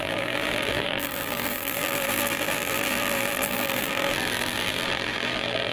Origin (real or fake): fake